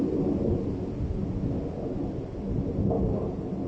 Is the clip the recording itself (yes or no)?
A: yes